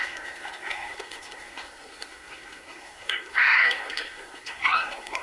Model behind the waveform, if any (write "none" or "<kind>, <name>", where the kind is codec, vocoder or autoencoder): codec, SNAC